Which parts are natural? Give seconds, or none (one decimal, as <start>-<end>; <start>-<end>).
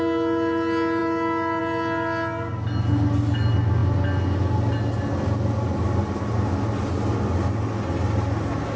0.0-8.8